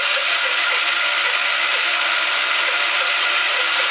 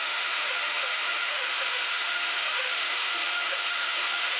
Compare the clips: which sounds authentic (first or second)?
first